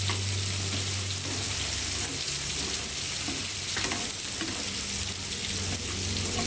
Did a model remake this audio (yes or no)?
no